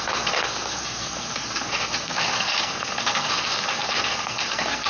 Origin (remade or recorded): remade